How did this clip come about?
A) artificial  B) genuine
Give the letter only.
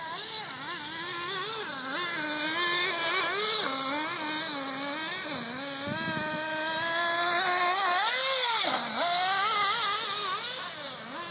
B